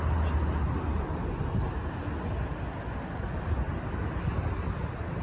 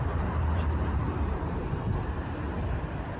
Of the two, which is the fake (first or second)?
second